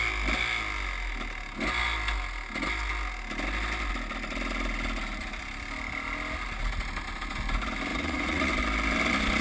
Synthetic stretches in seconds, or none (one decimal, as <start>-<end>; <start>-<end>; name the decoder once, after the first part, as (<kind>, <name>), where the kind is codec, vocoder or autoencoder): 7.9-8.5 (vocoder, Vocos)